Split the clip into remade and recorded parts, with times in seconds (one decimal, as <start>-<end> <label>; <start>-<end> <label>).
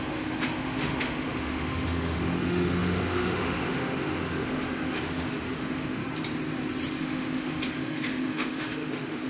0.0-6.0 remade; 6.0-7.0 recorded; 7.0-9.3 remade